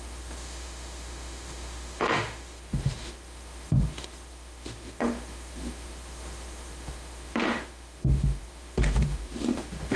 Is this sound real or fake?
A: fake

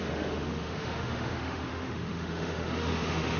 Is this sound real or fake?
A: fake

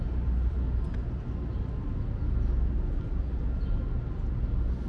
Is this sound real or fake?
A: real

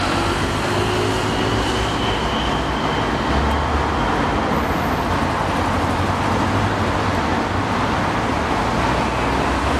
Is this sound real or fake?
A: real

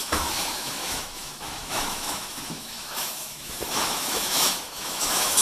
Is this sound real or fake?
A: fake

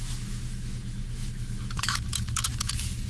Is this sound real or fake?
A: fake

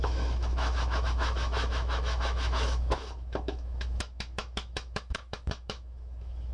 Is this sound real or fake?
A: fake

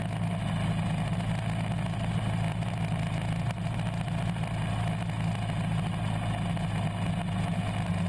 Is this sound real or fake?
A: real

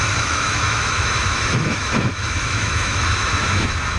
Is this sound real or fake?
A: fake